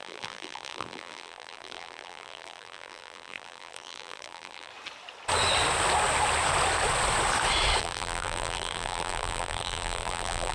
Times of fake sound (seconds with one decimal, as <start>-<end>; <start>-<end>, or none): 0.0-4.7; 7.8-10.5